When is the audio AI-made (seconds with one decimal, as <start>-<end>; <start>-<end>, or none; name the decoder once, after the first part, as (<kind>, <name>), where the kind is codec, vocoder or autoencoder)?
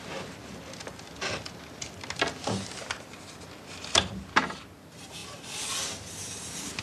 none